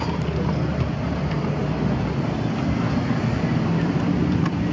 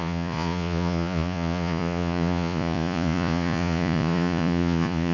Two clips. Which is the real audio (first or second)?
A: first